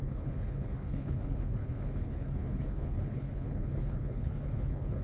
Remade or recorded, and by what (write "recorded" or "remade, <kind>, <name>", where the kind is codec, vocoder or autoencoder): remade, codec, HILCodec